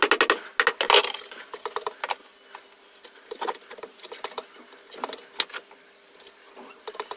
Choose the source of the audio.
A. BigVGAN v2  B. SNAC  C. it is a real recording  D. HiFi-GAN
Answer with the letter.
C